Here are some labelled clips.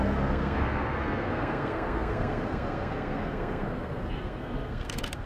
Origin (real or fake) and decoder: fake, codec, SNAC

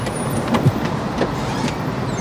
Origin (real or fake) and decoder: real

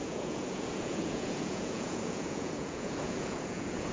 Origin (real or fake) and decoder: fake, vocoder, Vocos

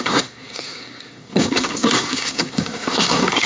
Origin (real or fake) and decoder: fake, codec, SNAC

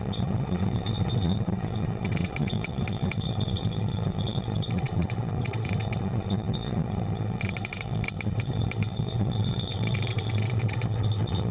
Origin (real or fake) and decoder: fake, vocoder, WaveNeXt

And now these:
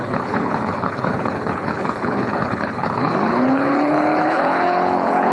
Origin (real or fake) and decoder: fake, codec, HILCodec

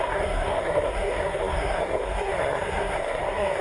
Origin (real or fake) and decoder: fake, codec, SNAC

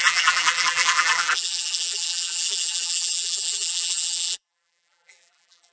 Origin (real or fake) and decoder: fake, vocoder, BigVGAN v2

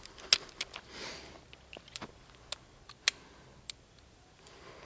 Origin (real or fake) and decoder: real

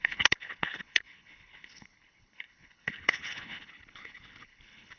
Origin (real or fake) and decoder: fake, codec, HILCodec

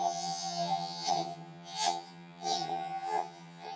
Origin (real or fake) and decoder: fake, vocoder, HiFi-GAN